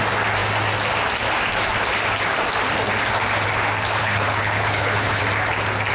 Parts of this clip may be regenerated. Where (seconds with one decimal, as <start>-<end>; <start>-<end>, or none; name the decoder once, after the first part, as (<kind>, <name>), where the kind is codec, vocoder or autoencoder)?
4.0-5.2 (codec, HILCodec)

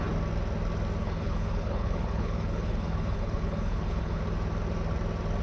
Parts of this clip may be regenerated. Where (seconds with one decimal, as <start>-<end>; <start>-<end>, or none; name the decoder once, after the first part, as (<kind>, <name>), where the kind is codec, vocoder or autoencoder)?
1.0-4.2 (codec, HILCodec)

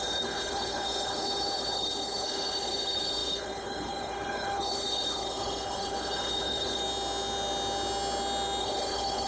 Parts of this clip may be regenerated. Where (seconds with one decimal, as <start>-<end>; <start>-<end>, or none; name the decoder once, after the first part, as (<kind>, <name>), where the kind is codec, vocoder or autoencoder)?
0.0-6.8 (codec, HILCodec); 8.6-9.3

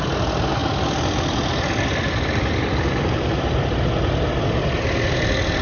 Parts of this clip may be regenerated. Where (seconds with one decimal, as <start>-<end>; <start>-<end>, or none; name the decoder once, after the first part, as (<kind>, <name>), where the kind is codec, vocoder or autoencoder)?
none